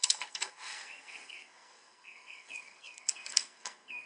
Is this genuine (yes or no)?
no